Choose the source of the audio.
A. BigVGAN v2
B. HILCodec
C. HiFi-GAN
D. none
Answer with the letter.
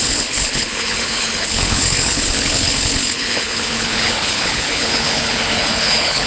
B